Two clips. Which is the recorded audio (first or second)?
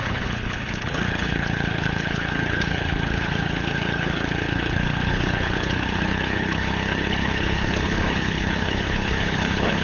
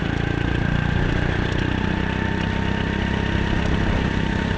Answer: second